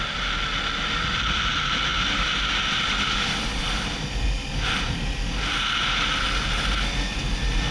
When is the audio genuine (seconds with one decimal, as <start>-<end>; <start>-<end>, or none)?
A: 0.0-7.7